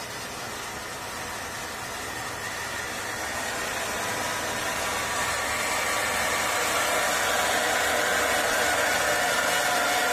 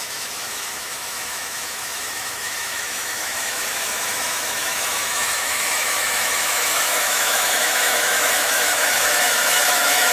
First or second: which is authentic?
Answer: first